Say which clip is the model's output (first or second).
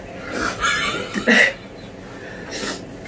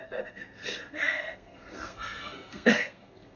second